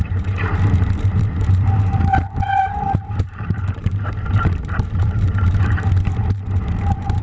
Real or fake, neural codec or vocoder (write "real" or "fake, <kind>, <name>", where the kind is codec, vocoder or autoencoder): fake, vocoder, BigVGAN v2